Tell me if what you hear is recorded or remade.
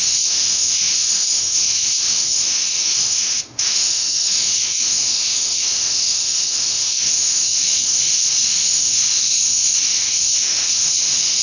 remade